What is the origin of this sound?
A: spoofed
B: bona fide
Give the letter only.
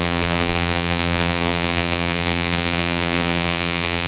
A